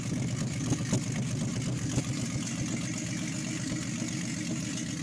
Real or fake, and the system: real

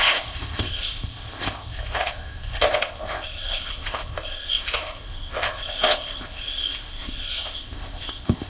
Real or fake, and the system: fake, codec, ZipCodec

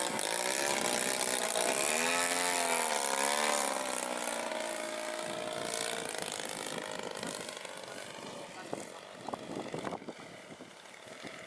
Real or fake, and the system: real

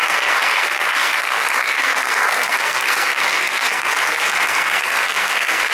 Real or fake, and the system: fake, codec, SNAC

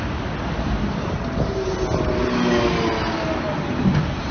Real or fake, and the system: real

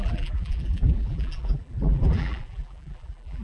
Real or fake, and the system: fake, vocoder, BigVGAN v2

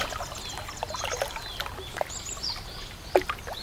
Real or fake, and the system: real